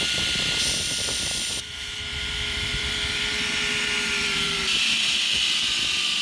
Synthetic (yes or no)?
yes